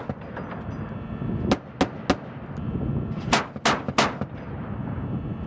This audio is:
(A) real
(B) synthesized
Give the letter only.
A